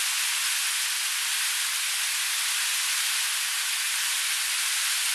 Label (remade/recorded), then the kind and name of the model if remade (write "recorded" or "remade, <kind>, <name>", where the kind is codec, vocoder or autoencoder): recorded